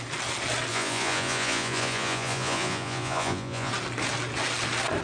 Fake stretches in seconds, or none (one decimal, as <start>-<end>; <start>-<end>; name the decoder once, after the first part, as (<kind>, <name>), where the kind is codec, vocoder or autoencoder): 0.7-3.7 (vocoder, Vocos)